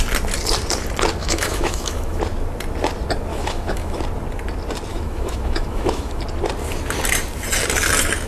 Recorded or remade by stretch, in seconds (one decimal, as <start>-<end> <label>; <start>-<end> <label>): 0.0-1.2 recorded; 1.2-2.2 remade; 2.2-3.3 recorded; 3.3-4.0 remade; 4.0-4.9 recorded; 4.9-6.2 remade; 6.2-8.3 recorded